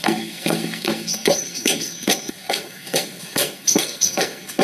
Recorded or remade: remade